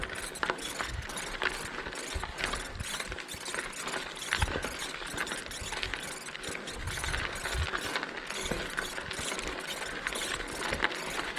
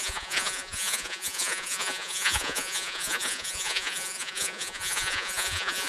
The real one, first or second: first